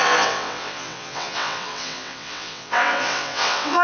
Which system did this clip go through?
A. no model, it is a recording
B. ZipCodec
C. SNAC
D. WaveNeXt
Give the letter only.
D